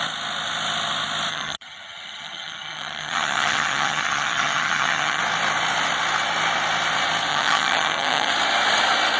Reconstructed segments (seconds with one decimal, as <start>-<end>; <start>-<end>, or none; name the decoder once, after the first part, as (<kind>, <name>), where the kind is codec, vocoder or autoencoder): 1.3-5.2 (vocoder, HiFi-GAN); 7.3-8.3